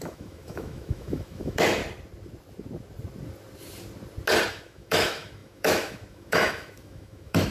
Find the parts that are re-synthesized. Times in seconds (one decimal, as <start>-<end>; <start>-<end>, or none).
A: 0.0-1.8; 4.5-7.5